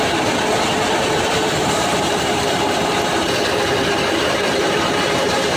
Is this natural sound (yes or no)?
no